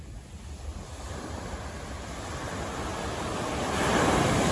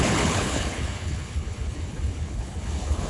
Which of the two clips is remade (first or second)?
second